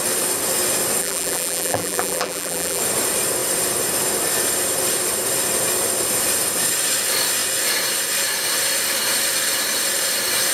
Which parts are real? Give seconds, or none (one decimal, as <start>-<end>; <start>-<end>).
0.0-1.0; 2.8-10.5